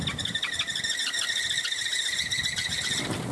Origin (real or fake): real